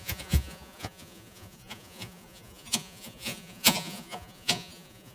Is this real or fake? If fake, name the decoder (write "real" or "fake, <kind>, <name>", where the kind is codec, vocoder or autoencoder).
fake, vocoder, Vocos